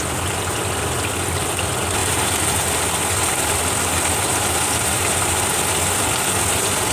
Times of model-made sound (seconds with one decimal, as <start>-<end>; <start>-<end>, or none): none